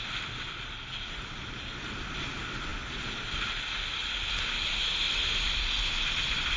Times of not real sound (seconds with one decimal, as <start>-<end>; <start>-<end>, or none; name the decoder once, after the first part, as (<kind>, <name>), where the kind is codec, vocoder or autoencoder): none